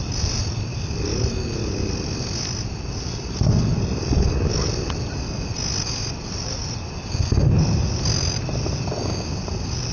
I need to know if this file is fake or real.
real